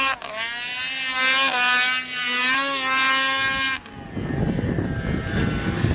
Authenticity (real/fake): real